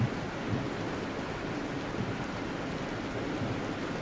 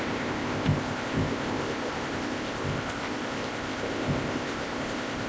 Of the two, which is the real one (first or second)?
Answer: first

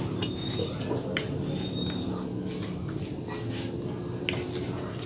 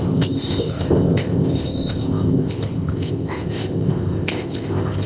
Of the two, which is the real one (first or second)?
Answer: first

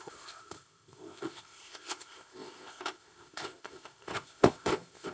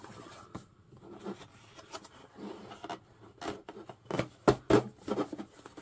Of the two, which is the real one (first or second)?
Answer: second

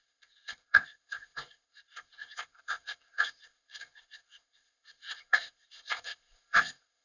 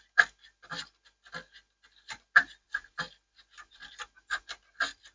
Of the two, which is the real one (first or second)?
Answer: second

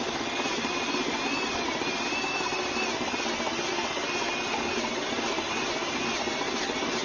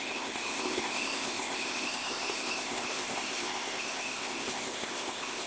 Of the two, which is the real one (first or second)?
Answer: first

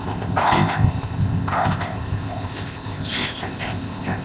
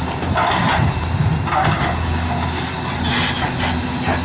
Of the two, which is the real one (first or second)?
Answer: second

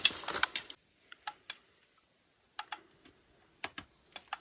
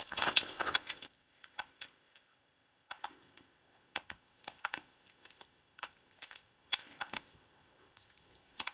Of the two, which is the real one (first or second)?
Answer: first